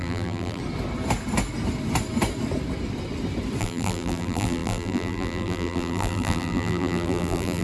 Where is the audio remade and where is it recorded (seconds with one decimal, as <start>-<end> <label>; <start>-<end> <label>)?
0.0-0.6 remade; 0.6-3.6 recorded; 3.6-7.6 remade

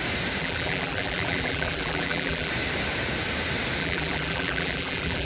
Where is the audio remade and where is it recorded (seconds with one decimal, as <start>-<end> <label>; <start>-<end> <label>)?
0.0-0.4 recorded; 0.4-2.5 remade; 2.5-3.8 recorded; 3.8-5.3 remade

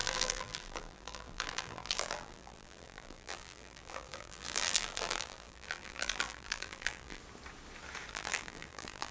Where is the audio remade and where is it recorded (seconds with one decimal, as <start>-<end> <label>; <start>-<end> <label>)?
0.0-7.2 remade; 7.2-8.1 recorded; 8.1-9.1 remade